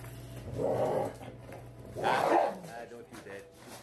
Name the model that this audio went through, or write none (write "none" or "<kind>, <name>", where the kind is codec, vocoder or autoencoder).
none